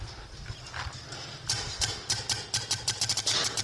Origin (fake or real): real